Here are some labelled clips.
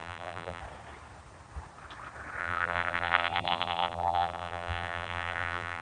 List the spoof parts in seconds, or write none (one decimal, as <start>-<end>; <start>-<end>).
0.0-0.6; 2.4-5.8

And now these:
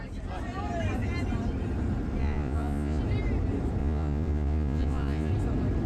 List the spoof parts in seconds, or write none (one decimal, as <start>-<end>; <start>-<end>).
2.2-3.0; 3.8-5.3

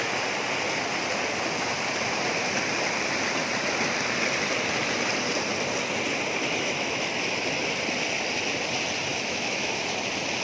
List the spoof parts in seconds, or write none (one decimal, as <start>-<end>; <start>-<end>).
6.4-7.1; 9.1-9.8